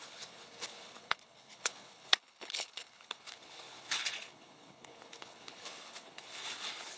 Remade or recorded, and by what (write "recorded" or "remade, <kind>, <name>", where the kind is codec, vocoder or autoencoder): remade, codec, HILCodec